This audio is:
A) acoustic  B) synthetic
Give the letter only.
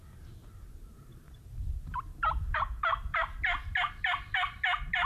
B